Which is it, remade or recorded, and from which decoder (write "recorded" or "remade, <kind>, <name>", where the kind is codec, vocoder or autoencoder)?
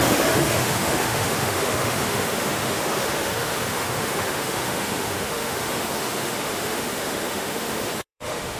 remade, autoencoder, DAC-VAE